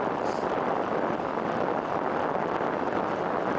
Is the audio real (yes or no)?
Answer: yes